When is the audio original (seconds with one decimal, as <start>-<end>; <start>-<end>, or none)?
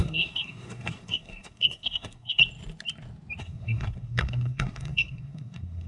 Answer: 2.4-3.4